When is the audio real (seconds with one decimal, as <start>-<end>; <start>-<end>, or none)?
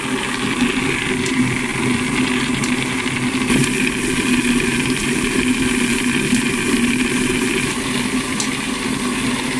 0.0-9.6